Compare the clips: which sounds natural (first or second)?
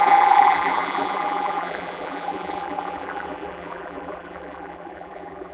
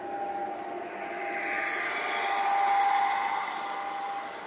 second